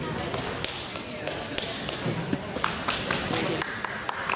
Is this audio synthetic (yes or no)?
no